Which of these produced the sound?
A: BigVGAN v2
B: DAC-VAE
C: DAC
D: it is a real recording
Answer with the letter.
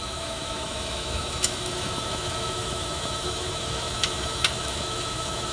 B